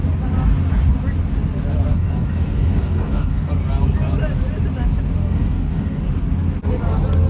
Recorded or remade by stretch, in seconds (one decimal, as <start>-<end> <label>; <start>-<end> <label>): 0.0-1.9 recorded; 1.9-3.5 remade; 3.5-5.2 recorded; 5.2-6.0 remade; 6.0-7.3 recorded